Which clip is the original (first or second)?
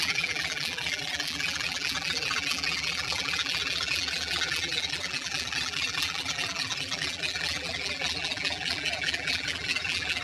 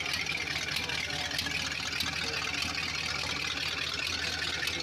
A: second